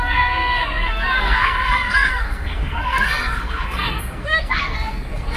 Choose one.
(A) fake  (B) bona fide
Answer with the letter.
A